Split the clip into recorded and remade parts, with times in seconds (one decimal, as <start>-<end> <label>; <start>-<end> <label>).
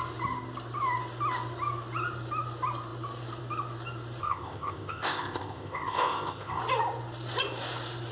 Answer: 0.0-4.2 recorded; 4.2-6.6 remade; 6.6-8.1 recorded